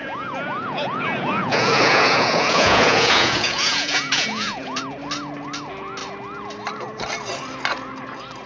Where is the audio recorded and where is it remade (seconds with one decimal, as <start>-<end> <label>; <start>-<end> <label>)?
0.0-4.8 remade; 4.8-8.5 recorded